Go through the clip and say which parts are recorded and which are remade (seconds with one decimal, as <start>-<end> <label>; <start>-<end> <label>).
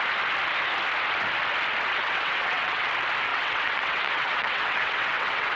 0.0-2.0 recorded; 2.0-2.9 remade; 2.9-3.3 recorded; 3.3-5.6 remade